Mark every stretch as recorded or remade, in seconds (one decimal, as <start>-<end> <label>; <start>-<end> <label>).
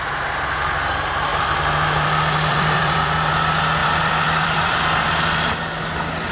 0.0-1.3 recorded; 1.3-3.3 remade; 3.3-3.8 recorded; 3.8-4.8 remade; 4.8-6.3 recorded